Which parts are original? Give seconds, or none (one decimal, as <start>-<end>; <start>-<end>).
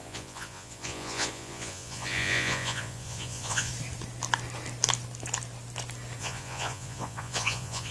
3.7-6.2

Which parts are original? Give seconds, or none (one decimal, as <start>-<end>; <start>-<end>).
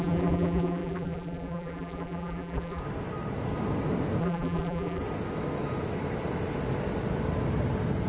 2.8-4.2; 5.0-8.1